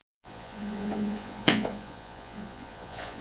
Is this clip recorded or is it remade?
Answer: remade